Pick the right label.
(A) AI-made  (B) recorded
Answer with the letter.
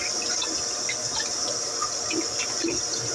B